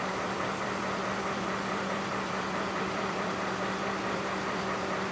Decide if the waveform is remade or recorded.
remade